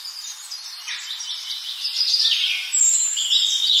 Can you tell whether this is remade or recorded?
recorded